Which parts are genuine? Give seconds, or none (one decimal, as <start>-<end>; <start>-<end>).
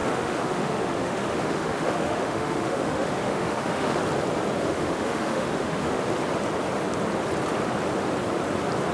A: 4.0-4.6; 6.0-8.9